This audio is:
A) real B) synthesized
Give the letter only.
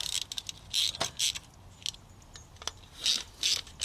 A